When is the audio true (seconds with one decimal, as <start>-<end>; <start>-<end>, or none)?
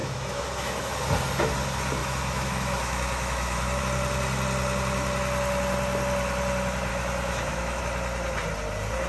0.9-2.0; 3.8-6.9; 7.8-9.1